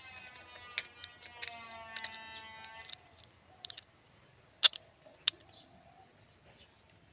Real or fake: real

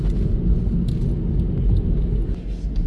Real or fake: real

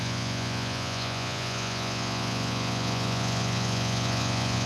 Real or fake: fake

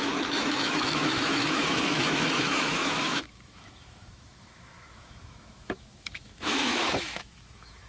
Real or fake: fake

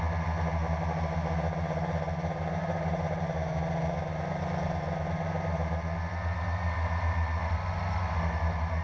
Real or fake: real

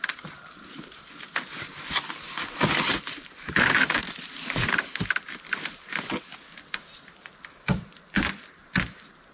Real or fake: real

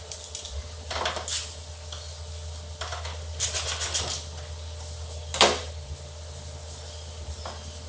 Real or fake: real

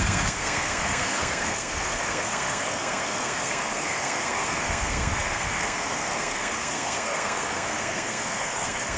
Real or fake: fake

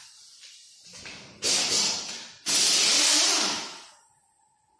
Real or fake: real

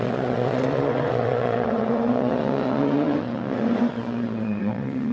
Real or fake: fake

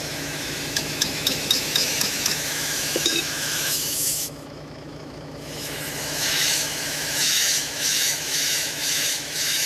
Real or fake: fake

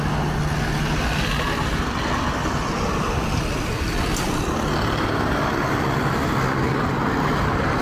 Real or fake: real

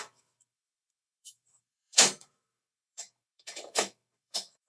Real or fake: fake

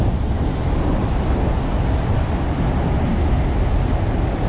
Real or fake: real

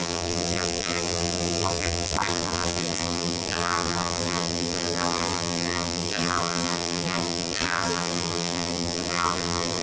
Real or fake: fake